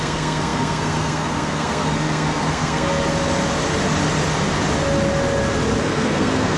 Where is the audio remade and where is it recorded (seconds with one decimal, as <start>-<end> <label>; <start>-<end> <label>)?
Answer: 0.0-3.1 remade; 3.1-5.8 recorded; 5.8-6.6 remade